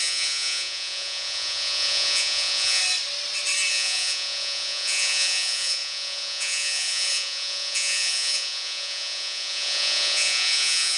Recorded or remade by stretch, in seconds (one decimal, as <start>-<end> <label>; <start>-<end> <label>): 0.0-2.8 remade; 2.8-3.7 recorded; 3.7-11.0 remade